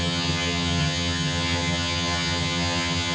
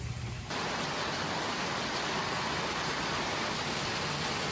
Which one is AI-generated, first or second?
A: first